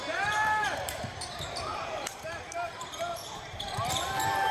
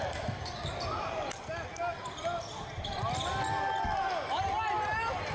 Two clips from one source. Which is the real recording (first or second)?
second